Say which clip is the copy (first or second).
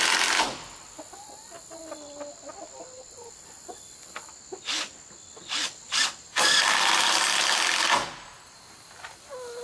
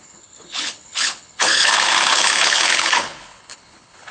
second